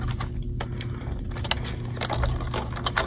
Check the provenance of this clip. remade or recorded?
recorded